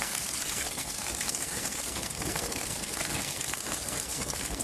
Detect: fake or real fake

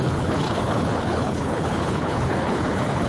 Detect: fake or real fake